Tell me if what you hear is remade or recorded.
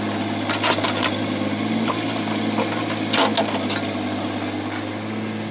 recorded